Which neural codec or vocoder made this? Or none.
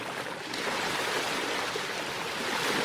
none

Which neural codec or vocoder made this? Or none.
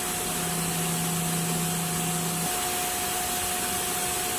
none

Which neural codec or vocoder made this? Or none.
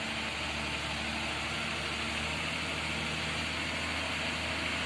none